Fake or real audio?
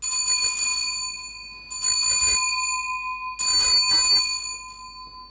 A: real